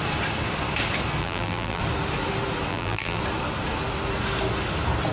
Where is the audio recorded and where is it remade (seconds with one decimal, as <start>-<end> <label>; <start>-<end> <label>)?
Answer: 0.0-1.2 recorded; 1.2-1.8 remade; 1.8-2.7 recorded; 2.7-3.2 remade; 3.2-5.1 recorded

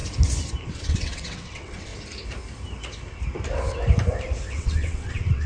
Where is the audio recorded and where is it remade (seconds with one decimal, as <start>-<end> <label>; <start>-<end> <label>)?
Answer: 0.0-0.7 recorded; 0.7-1.9 remade; 1.9-4.5 recorded; 4.5-5.5 remade

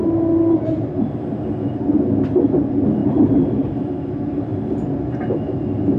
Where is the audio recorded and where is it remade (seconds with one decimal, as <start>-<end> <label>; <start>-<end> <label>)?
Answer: 0.0-1.2 remade; 1.2-3.0 recorded; 3.0-3.7 remade; 3.7-6.0 recorded

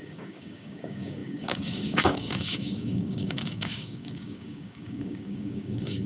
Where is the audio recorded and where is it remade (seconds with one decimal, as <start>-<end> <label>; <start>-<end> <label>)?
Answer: 0.0-6.1 remade

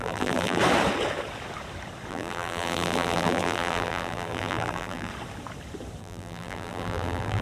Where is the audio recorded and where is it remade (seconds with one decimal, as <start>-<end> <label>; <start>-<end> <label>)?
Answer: 0.0-0.6 remade; 0.6-2.1 recorded; 2.1-5.1 remade; 5.1-6.0 recorded; 6.0-7.4 remade

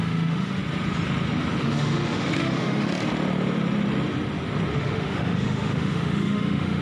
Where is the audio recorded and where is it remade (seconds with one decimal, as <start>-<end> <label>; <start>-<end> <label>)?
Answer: 0.0-0.6 remade; 0.6-1.6 recorded; 1.6-3.1 remade; 3.1-4.7 recorded; 4.7-6.8 remade

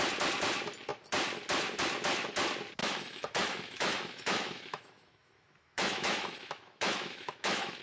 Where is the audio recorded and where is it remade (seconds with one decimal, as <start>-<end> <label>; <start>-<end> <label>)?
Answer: 0.0-2.8 recorded; 2.8-7.8 remade